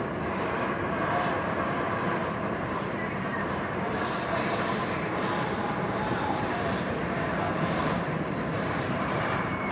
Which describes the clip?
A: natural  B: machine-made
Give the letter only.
B